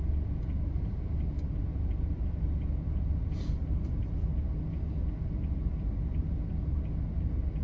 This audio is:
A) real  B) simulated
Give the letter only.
A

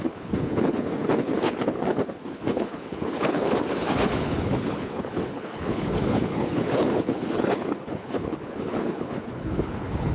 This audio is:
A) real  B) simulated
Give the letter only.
B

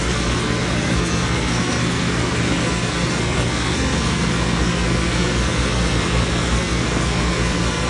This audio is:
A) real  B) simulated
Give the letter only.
B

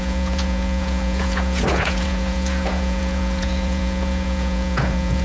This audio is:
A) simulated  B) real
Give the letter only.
A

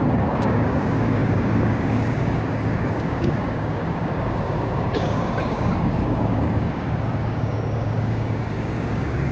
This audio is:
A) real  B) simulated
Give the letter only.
B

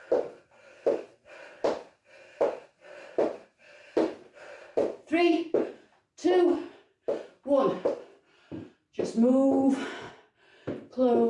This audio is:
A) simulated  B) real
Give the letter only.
B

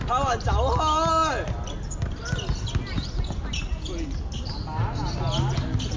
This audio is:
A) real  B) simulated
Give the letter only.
A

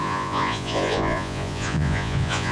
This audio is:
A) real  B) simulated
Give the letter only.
B